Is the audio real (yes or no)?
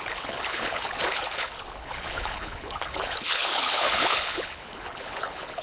no